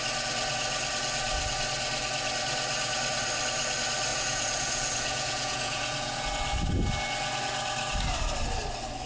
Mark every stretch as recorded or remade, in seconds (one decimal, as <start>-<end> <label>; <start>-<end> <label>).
0.0-4.1 recorded; 4.1-6.2 remade; 6.2-9.1 recorded